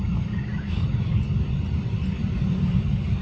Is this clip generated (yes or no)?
no